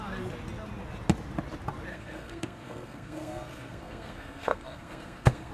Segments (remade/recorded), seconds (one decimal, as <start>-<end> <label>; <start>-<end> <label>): 0.0-1.9 recorded; 1.9-5.5 remade